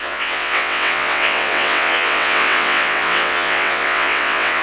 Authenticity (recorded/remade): remade